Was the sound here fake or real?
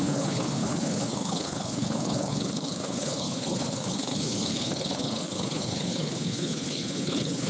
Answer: fake